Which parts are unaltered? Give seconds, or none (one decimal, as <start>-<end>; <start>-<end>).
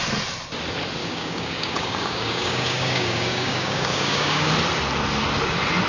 0.0-1.0; 4.5-5.9